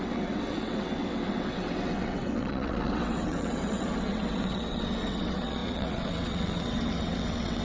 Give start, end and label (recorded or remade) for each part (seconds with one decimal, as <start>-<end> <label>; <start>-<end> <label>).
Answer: 0.0-7.6 remade